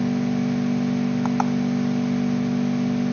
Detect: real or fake real